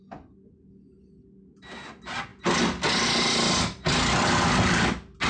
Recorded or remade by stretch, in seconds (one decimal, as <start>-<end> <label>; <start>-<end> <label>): 0.0-5.3 recorded